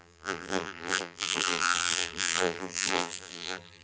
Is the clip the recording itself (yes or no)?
no